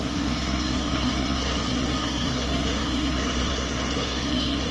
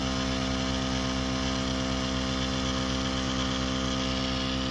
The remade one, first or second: first